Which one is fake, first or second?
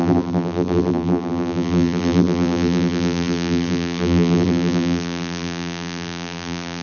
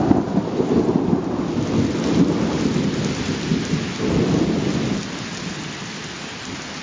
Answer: first